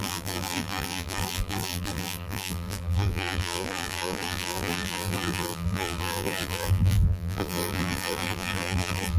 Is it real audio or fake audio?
fake